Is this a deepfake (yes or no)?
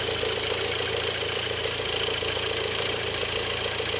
no